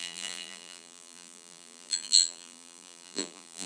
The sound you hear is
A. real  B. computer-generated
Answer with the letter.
B